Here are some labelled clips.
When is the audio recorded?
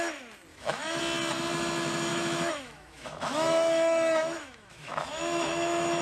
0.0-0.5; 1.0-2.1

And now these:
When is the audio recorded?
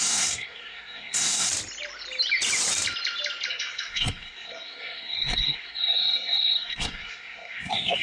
1.5-3.5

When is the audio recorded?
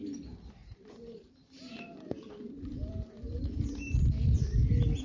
0.0-0.6; 3.6-5.0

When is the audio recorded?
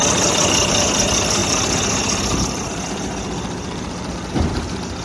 0.0-5.0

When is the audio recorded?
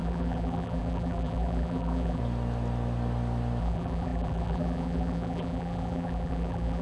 2.2-3.6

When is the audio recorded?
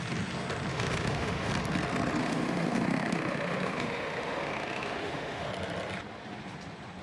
0.0-0.7; 1.5-2.2; 5.5-7.0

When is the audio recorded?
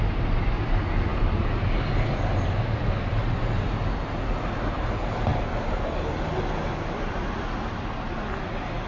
0.0-8.9